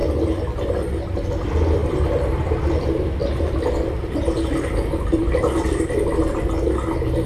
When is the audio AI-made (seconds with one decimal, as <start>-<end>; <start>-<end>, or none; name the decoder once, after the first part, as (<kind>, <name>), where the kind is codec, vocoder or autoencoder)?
0.0-0.7 (vocoder, BigVGAN v2); 1.8-2.7